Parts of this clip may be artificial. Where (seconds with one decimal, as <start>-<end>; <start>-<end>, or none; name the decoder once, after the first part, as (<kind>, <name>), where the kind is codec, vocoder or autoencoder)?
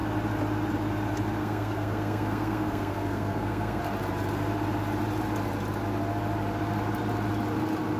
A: 1.4-3.8 (codec, SNAC)